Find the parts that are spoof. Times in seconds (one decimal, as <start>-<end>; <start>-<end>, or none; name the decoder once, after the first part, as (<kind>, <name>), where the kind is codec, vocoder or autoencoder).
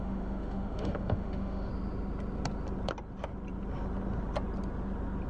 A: 0.0-1.7 (autoencoder, DAC-VAE)